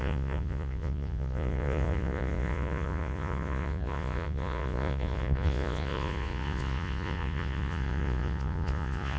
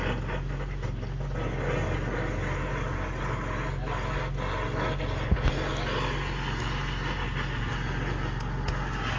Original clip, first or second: second